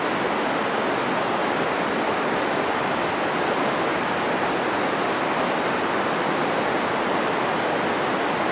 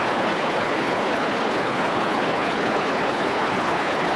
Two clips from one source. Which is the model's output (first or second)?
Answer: second